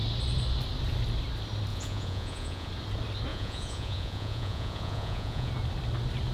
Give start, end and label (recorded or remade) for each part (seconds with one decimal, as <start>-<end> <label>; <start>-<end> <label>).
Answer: 0.0-1.7 recorded; 1.7-2.7 remade; 2.7-3.3 recorded; 3.3-5.5 remade; 5.5-6.3 recorded